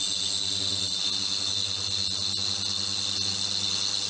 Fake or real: real